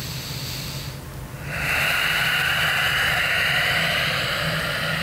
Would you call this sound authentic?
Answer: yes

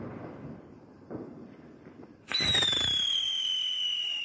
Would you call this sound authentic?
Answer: no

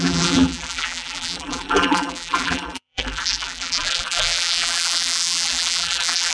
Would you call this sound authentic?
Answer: no